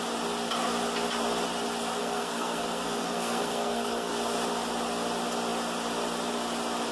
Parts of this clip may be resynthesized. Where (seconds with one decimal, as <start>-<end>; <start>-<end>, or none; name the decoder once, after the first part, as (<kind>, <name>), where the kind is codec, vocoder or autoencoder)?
2.0-4.1 (codec, SNAC)